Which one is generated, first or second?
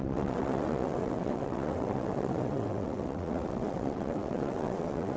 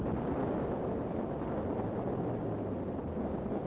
first